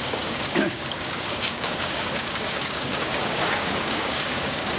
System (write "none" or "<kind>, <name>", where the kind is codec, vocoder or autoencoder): codec, DAC